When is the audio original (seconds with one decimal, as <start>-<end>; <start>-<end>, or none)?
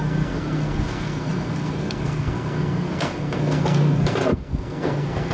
none